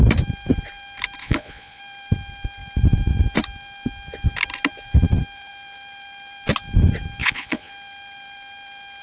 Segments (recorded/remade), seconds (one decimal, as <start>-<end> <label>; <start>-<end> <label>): 0.0-1.2 recorded; 1.2-1.8 remade; 1.8-7.2 recorded; 7.2-7.7 remade; 7.7-9.0 recorded